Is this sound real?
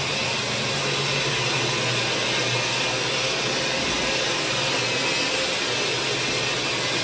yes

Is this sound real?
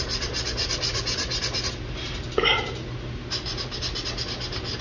yes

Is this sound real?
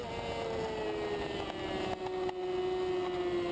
yes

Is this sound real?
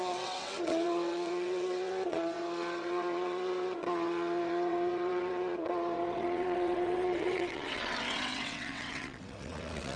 no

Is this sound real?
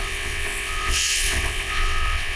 no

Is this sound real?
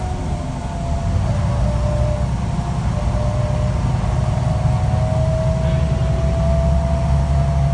yes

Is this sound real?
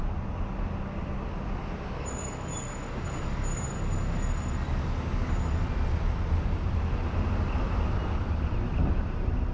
yes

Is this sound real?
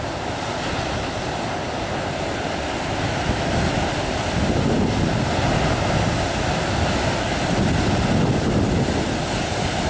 yes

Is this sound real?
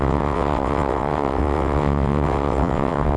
no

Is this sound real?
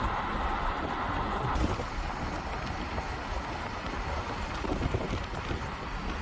yes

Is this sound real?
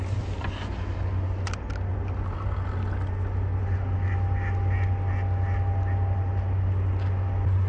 yes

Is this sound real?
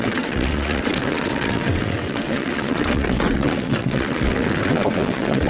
no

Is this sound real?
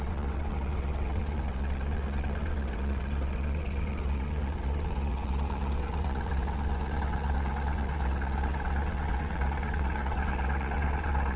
no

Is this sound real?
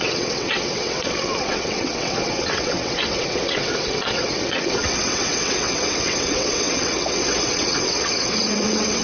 no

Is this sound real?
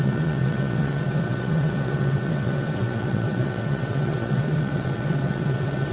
no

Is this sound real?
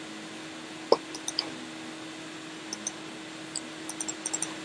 yes